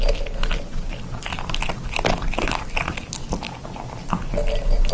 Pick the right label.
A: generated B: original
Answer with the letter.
B